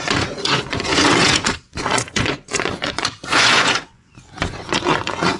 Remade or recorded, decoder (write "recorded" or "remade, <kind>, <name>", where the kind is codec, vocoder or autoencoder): remade, vocoder, Vocos